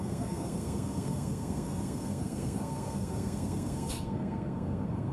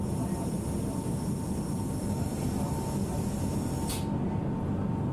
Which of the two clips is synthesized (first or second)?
first